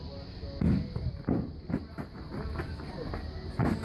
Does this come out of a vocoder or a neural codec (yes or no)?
no